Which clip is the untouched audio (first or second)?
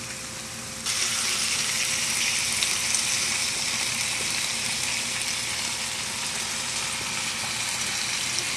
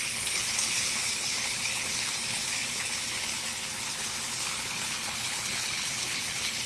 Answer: first